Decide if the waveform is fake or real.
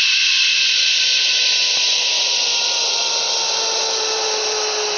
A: real